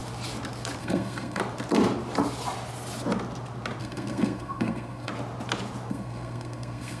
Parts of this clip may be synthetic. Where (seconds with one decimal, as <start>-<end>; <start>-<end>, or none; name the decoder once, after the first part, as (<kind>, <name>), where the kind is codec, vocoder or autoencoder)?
0.8-1.4 (codec, SNAC); 3.8-5.1; 5.9-7.0

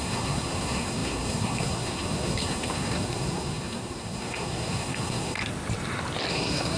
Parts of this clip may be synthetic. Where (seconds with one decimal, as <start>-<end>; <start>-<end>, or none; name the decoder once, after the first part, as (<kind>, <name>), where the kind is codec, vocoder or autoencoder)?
0.0-5.4 (codec, SNAC); 6.3-6.8

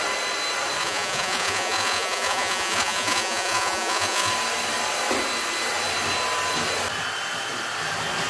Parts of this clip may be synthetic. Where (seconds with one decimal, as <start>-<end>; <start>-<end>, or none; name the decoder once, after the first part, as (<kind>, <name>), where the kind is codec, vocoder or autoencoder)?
0.8-4.3 (vocoder, Vocos)

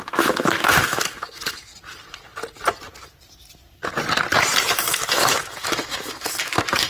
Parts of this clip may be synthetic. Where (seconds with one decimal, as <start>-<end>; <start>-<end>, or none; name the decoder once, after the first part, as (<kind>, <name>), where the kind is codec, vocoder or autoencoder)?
0.0-1.7 (autoencoder, DAC-VAE); 4.6-6.9